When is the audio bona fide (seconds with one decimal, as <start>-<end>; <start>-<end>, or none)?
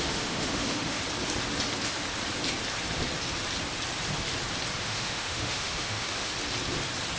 1.0-4.8; 6.3-7.2